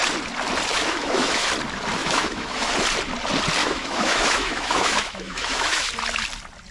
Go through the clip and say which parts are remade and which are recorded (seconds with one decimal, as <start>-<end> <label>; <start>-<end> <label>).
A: 0.0-0.7 recorded; 0.7-1.5 remade; 1.5-2.0 recorded; 2.0-2.7 remade; 2.7-3.6 recorded; 3.6-5.9 remade; 5.9-6.7 recorded